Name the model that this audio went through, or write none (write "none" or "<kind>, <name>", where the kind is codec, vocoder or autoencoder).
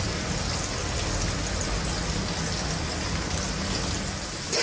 none